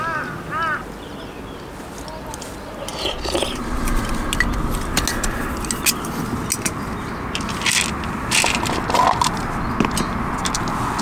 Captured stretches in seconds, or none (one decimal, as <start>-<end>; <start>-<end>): 0.0-11.0